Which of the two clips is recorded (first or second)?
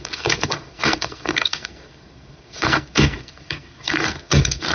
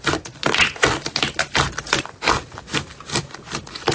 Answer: second